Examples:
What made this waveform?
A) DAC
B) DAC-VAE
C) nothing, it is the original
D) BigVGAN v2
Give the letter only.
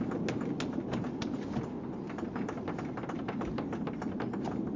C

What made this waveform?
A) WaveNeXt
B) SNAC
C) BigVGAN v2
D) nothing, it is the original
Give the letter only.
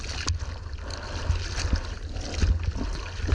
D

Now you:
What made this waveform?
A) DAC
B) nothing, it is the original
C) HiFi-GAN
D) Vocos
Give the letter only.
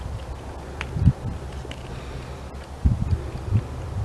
B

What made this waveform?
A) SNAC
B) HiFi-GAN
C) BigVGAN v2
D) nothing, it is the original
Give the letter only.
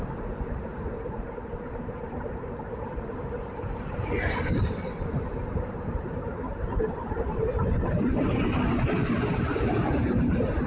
C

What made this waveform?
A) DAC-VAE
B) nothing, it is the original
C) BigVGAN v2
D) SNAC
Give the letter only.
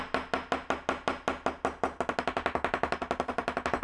B